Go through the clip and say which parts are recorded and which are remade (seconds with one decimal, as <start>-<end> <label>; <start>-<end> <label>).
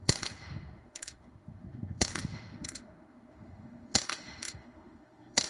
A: 0.0-5.5 remade